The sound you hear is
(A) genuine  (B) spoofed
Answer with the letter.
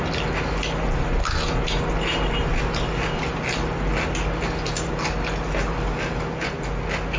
A